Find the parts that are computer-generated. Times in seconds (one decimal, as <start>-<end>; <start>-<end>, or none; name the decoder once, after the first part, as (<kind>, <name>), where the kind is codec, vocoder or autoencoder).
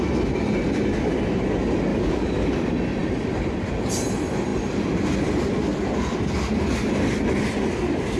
1.9-2.5 (codec, DAC)